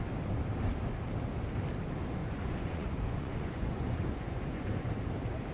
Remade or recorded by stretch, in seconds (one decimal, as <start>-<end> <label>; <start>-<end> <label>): 0.0-2.2 recorded; 2.2-4.9 remade; 4.9-5.5 recorded